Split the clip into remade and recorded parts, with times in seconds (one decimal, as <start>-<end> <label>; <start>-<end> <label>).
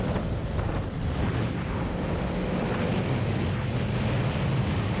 0.0-0.4 recorded; 0.4-1.9 remade; 1.9-5.0 recorded